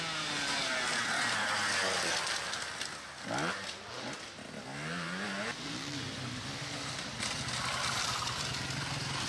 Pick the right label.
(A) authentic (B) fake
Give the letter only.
A